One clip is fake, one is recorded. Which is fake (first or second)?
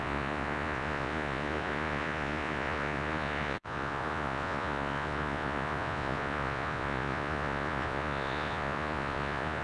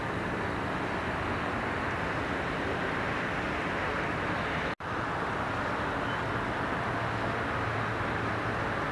first